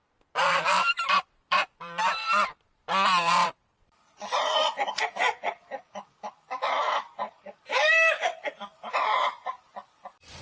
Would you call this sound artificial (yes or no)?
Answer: yes